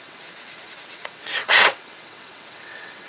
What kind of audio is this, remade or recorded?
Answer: remade